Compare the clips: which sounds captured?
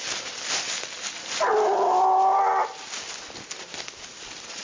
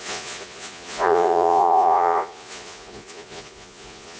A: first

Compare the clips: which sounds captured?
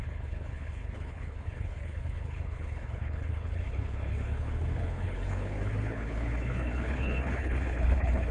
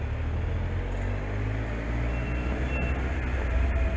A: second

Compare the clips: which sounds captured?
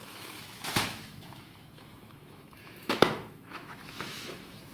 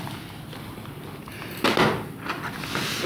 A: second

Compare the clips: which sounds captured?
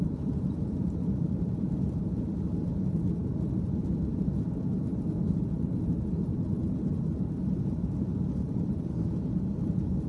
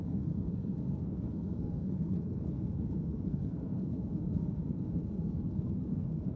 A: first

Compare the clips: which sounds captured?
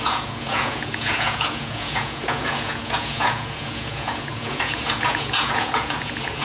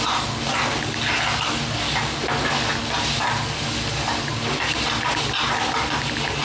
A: second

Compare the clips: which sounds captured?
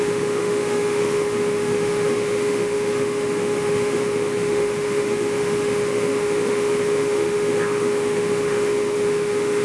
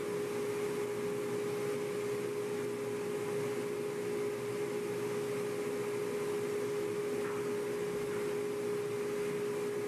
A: second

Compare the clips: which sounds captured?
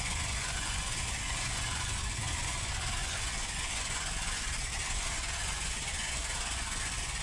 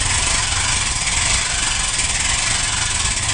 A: second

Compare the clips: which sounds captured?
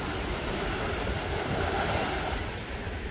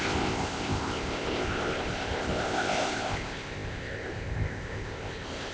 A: first